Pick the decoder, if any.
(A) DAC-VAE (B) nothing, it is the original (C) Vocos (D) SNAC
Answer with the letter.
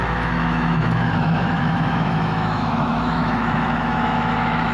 A